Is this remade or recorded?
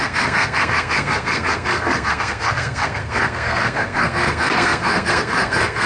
remade